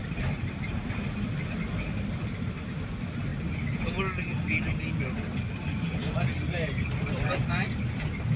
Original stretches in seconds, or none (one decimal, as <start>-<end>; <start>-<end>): 0.0-8.4